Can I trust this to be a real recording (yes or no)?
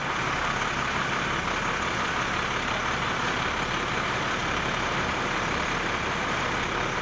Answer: yes